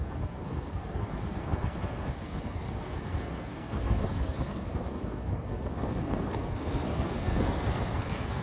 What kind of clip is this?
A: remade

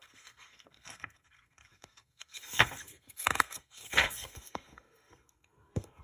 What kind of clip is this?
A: remade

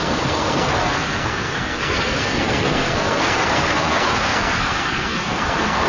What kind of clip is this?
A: remade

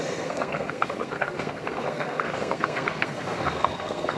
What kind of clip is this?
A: remade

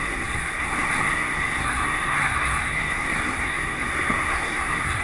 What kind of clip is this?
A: remade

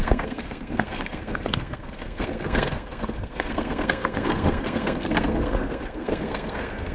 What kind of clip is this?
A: remade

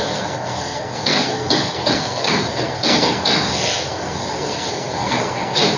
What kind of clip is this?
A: remade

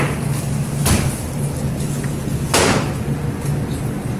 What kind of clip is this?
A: recorded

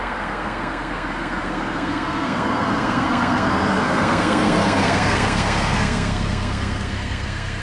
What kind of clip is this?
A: remade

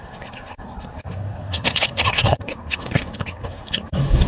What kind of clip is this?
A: remade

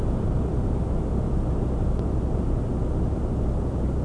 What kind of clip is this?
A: recorded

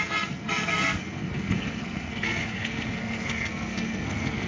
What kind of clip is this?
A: remade